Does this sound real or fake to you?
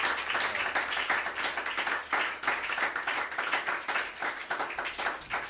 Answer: real